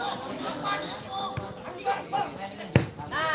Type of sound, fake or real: real